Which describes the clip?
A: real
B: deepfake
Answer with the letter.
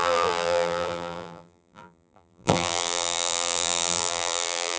B